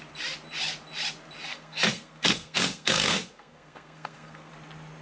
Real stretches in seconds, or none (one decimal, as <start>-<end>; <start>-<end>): 0.0-1.5; 4.5-5.0